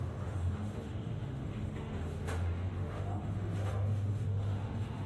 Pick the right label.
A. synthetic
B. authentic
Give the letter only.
A